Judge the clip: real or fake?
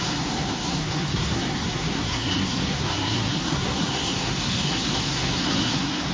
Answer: fake